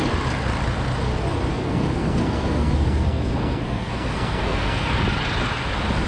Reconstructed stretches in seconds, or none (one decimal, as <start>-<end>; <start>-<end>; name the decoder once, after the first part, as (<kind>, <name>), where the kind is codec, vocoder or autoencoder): 1.5-4.9 (codec, SNAC)